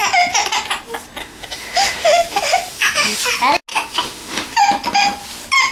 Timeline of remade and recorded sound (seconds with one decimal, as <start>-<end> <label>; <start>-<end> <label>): 0.0-1.2 recorded; 1.2-3.2 remade; 3.2-3.7 recorded; 3.7-4.6 remade; 4.6-5.7 recorded